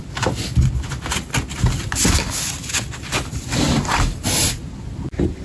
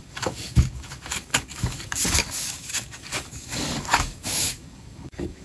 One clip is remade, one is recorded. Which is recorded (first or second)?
first